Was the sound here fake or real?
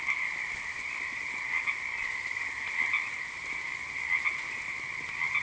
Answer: real